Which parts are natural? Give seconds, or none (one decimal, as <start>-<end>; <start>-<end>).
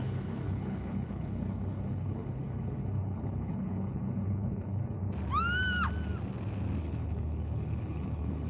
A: 5.0-6.8